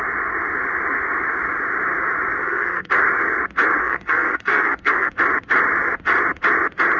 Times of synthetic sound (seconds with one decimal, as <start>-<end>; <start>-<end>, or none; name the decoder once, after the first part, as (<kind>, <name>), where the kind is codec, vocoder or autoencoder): 2.4-2.9 (codec, SNAC); 3.8-5.1